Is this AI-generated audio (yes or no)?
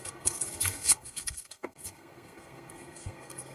yes